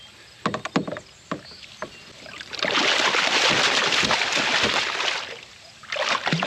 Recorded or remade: recorded